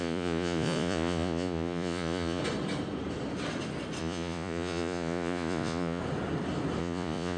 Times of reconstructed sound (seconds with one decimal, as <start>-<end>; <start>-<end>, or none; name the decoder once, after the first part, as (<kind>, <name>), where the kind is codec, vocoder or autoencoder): 0.0-2.4 (vocoder, Vocos); 4.0-6.0; 6.8-7.4